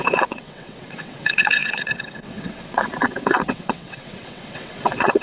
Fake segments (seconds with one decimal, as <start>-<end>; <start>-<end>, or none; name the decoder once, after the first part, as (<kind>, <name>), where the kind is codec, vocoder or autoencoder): 0.0-5.2 (vocoder, WaveNeXt)